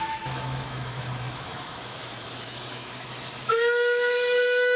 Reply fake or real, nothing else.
fake